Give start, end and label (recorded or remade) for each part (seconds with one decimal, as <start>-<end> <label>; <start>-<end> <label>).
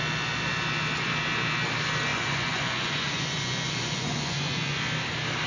0.0-2.1 recorded; 2.1-4.8 remade; 4.8-5.5 recorded